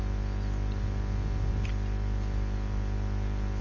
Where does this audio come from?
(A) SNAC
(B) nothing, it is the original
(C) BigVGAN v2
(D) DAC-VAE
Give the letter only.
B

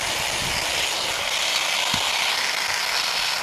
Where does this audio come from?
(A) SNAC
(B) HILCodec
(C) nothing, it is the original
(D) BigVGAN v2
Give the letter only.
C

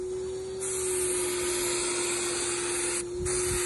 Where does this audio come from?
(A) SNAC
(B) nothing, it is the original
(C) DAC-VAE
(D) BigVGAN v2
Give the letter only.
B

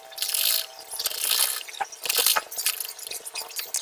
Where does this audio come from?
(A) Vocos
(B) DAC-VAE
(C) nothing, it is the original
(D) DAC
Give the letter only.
C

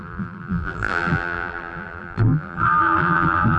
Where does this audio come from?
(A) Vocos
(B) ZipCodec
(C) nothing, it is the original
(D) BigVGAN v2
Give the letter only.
D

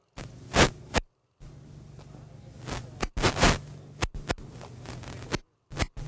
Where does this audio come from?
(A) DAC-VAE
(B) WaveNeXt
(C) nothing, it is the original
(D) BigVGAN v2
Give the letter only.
C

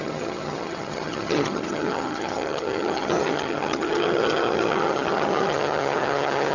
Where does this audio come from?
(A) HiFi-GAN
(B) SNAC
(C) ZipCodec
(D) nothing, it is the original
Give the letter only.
A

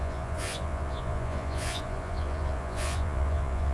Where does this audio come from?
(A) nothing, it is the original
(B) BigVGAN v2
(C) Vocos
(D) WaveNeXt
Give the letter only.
C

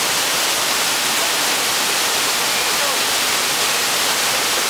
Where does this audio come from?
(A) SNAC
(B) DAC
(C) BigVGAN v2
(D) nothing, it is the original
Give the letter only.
D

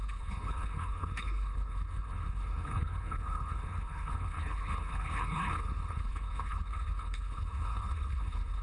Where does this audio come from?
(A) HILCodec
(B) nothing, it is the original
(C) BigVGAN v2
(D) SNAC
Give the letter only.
A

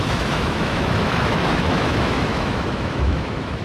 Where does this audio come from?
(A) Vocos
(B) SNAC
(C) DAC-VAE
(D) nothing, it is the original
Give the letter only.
C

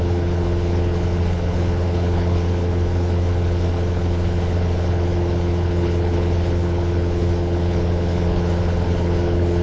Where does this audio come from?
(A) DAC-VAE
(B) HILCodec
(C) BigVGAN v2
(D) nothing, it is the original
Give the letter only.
B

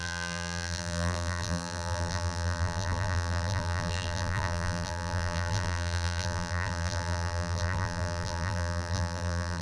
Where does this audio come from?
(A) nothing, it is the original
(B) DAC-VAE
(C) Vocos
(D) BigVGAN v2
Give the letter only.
D